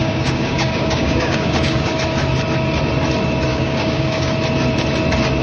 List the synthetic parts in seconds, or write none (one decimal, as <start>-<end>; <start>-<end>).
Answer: 0.0-1.9; 3.5-4.3